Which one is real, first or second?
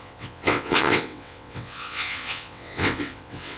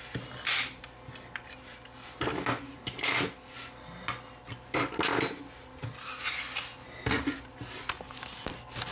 second